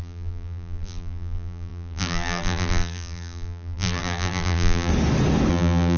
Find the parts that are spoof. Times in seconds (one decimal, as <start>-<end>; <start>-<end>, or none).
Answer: 0.0-4.9; 5.5-6.0